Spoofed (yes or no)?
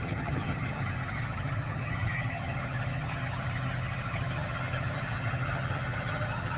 yes